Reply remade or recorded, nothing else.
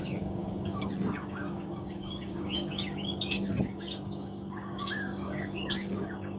remade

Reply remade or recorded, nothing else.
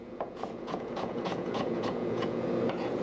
remade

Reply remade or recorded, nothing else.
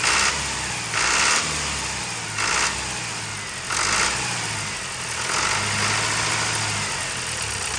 recorded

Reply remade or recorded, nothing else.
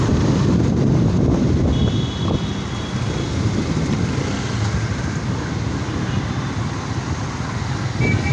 recorded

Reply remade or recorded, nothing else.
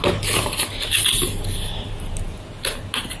recorded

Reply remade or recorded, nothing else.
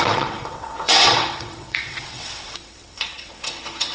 remade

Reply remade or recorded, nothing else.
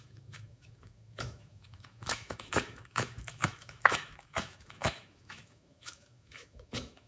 remade